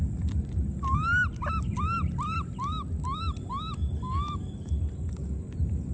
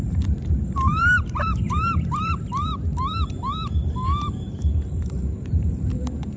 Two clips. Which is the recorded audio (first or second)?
first